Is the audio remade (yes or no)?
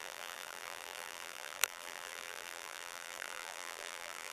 yes